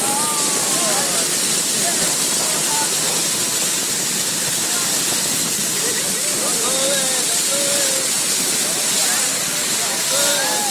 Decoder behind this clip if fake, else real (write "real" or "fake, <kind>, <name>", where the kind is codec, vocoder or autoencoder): real